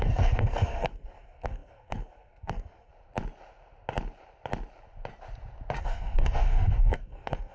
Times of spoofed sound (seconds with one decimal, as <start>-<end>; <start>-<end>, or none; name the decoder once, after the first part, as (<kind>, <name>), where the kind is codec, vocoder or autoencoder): 0.0-2.9 (codec, SNAC); 5.8-7.5